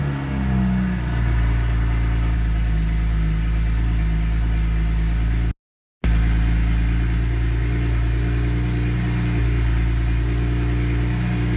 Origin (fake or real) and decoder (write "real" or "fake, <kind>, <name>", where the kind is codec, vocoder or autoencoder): real